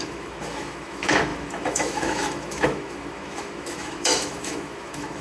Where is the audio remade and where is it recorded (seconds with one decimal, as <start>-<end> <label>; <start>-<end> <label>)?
0.0-5.2 remade